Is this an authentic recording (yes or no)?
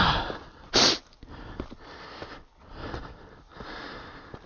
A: yes